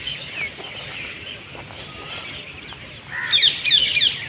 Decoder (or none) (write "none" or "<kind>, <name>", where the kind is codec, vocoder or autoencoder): none